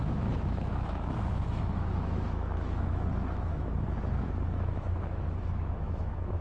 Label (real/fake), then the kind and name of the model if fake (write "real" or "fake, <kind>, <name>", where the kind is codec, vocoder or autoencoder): fake, autoencoder, DAC-VAE